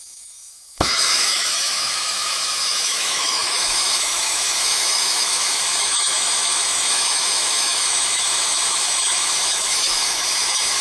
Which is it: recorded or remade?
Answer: remade